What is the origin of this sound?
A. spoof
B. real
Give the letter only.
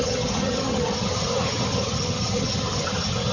A